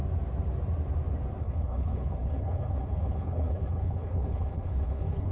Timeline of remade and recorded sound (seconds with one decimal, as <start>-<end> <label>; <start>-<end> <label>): 0.0-1.4 recorded; 1.4-5.3 remade